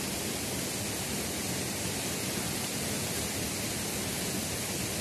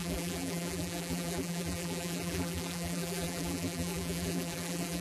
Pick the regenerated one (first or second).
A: second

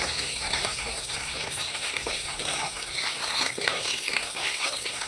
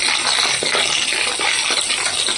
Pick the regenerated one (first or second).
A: first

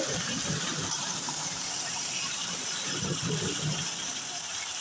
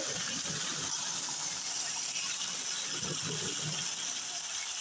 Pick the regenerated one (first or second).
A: first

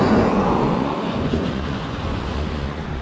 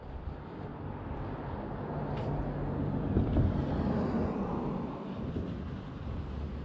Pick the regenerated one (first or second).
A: first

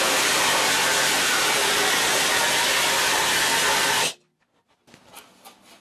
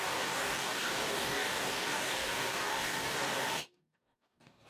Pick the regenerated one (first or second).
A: second